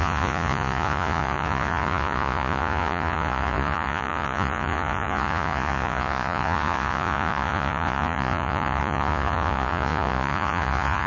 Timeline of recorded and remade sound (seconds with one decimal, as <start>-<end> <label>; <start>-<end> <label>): 0.0-11.1 remade